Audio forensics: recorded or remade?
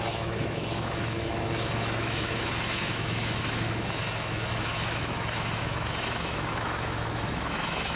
remade